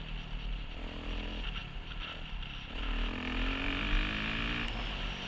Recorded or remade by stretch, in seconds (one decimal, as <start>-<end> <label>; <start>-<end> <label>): 0.0-5.3 recorded